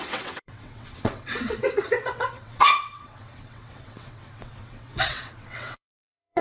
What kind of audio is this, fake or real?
fake